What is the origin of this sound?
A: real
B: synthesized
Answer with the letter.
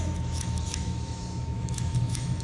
B